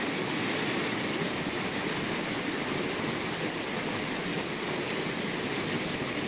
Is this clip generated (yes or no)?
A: no